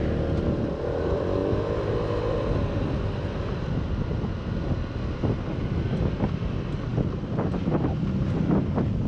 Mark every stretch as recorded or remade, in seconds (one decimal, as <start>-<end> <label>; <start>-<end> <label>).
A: 0.0-9.1 recorded